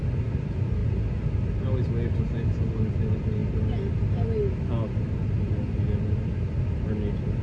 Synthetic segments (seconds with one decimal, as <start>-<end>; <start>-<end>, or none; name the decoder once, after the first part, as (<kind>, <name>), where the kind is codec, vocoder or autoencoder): none